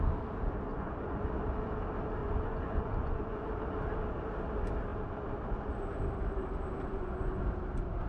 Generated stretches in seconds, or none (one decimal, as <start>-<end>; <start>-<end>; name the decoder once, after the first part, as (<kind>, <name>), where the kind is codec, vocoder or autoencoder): 0.7-1.3 (vocoder, Vocos); 2.2-3.5; 6.9-7.4